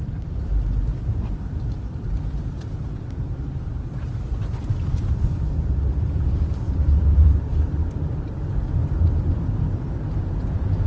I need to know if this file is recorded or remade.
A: remade